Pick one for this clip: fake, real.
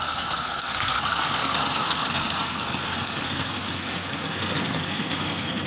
fake